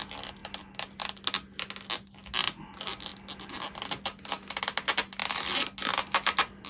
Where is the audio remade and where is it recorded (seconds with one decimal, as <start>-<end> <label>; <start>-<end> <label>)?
0.0-6.7 recorded